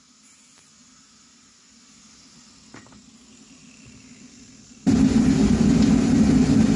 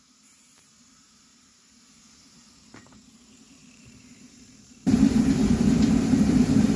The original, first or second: first